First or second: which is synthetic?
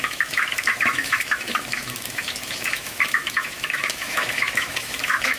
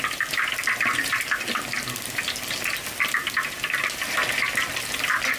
first